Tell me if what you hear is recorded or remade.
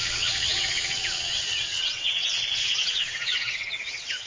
remade